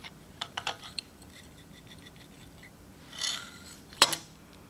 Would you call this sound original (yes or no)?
no